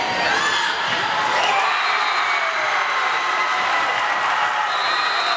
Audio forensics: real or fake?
real